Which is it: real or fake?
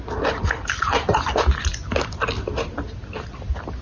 real